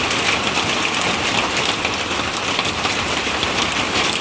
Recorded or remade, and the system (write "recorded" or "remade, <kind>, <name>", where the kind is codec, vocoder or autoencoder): remade, vocoder, BigVGAN v2